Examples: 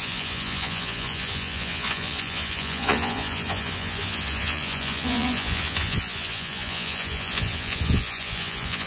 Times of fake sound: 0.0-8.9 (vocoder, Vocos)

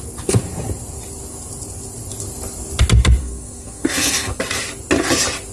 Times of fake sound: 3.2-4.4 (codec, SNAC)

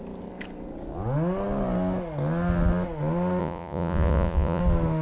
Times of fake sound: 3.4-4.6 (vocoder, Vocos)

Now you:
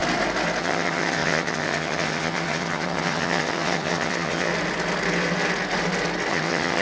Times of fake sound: 0.6-4.5 (vocoder, HiFi-GAN); 6.3-6.8

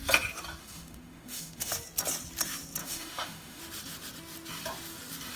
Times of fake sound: 0.6-1.7 (autoencoder, DAC-VAE); 2.8-3.6